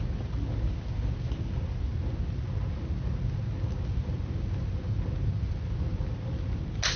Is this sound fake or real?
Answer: real